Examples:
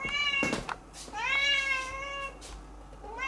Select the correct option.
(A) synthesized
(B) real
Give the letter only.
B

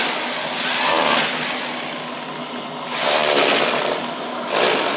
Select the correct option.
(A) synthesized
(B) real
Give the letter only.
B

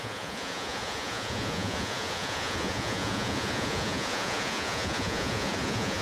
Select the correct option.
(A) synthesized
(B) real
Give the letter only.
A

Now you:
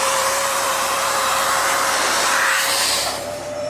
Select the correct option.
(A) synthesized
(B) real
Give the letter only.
A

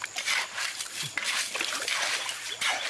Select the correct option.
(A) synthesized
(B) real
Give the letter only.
A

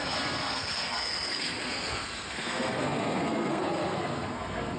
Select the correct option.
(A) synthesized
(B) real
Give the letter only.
A